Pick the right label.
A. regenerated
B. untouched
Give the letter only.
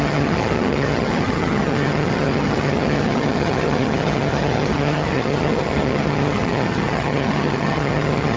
A